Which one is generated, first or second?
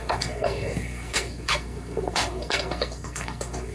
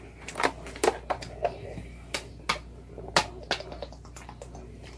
first